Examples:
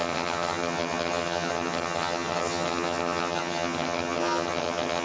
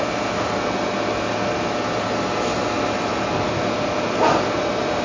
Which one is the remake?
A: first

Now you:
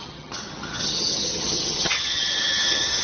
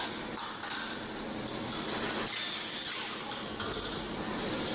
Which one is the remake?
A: first